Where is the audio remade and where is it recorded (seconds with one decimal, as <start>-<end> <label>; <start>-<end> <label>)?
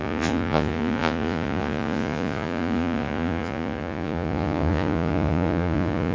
0.0-6.1 remade